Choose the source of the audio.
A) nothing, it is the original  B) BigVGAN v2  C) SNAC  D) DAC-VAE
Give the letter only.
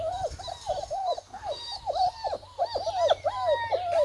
A